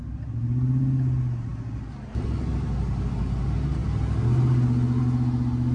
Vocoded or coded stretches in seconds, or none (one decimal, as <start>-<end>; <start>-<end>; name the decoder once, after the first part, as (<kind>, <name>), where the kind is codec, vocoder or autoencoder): none